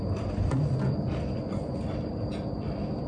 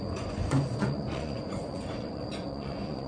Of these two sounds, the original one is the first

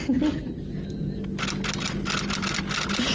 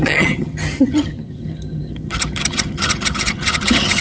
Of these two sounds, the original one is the first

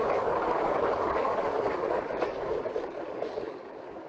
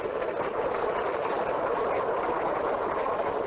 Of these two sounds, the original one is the second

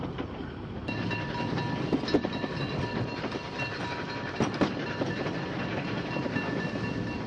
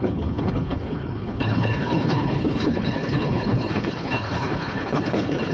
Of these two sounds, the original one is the first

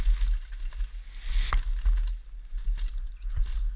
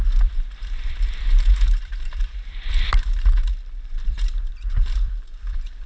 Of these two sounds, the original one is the first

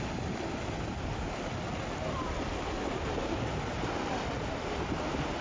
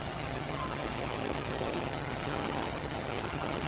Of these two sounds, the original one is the first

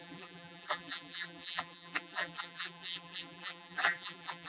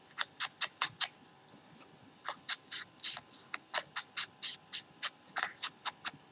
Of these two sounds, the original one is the second